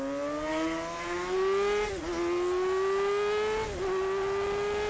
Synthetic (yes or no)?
no